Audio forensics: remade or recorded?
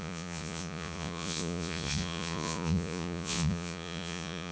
remade